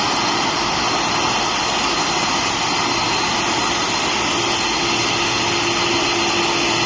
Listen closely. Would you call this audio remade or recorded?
recorded